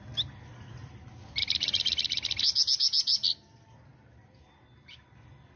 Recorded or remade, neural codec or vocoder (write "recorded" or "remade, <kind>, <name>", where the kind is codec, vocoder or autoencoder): recorded